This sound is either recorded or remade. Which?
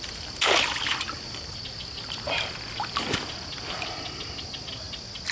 recorded